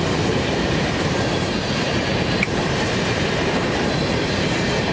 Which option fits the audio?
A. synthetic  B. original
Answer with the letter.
A